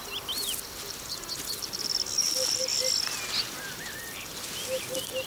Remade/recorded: recorded